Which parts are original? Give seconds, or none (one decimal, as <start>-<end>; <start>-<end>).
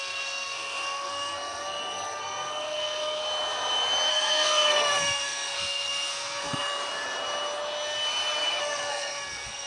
3.2-4.1; 6.8-8.6